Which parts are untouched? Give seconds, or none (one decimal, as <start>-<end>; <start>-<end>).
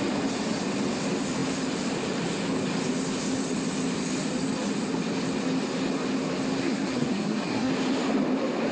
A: 0.0-6.6; 7.7-8.7